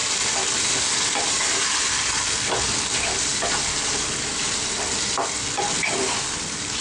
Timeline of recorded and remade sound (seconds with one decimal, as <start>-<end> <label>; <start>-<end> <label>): 0.0-6.8 recorded